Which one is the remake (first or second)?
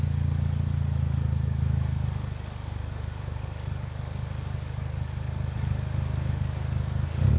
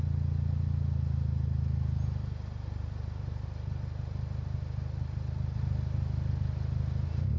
first